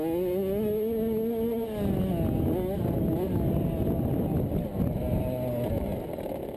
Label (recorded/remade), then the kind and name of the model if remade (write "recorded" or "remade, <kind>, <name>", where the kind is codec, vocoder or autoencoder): recorded